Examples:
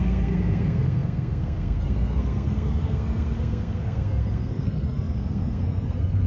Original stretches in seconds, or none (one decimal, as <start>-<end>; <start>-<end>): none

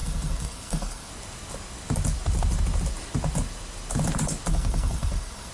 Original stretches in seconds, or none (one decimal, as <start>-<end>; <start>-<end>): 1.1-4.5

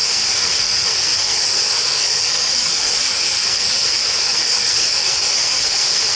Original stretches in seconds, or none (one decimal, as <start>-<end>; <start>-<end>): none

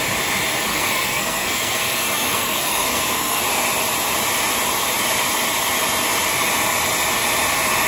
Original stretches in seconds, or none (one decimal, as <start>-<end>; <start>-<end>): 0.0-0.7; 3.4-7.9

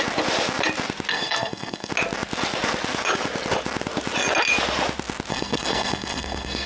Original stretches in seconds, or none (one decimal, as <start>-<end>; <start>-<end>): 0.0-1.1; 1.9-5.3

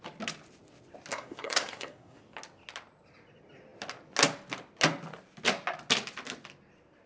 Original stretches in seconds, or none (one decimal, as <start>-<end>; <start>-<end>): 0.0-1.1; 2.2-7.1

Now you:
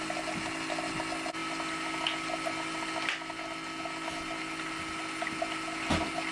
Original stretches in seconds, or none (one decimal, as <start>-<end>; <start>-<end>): 0.0-6.3